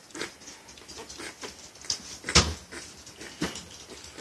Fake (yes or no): no